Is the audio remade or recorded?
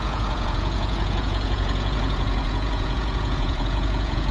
remade